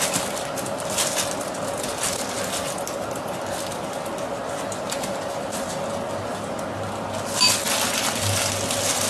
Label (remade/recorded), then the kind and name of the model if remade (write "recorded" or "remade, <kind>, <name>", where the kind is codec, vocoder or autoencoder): recorded